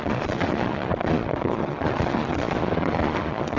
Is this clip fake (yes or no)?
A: yes